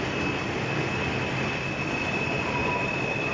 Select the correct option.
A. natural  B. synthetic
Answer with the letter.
A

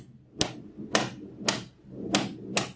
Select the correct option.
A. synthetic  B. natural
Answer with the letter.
B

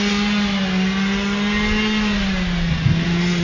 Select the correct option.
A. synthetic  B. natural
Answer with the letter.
B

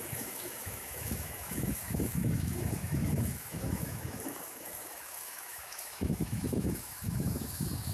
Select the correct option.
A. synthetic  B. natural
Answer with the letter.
A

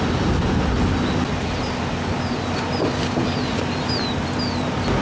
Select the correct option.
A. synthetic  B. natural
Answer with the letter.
B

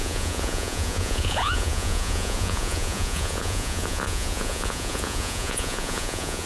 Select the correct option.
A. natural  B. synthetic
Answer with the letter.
B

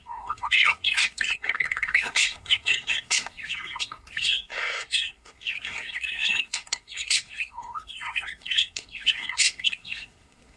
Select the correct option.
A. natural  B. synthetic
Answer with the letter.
B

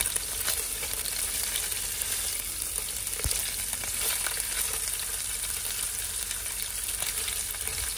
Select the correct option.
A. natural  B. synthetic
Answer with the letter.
A